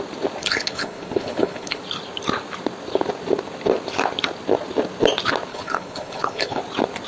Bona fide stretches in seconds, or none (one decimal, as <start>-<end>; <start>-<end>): 0.0-0.4; 1.8-5.5; 6.6-7.1